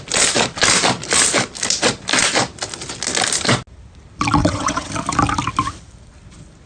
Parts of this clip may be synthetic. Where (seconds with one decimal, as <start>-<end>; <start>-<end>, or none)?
4.4-4.9